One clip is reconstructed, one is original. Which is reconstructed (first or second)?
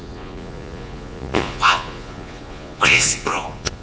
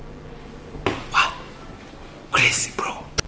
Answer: first